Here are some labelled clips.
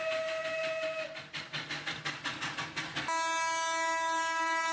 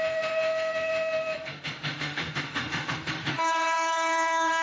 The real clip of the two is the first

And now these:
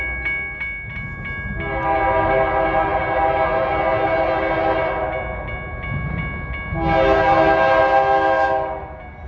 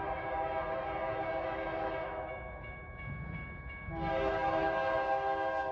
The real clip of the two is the first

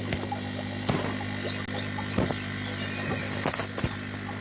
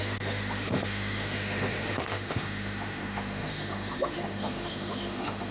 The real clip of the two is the first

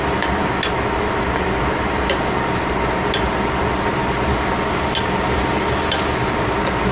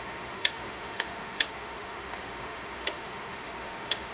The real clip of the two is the first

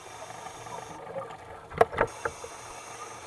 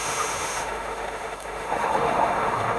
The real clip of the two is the first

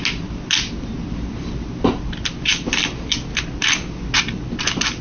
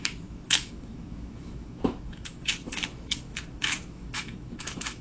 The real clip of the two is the first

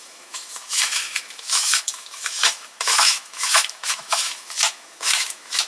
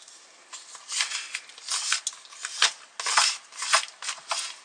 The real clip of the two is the second